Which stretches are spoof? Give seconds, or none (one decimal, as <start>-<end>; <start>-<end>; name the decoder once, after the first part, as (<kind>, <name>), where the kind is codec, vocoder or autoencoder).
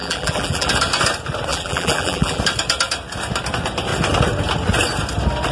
0.0-0.7 (vocoder, BigVGAN v2); 1.5-2.4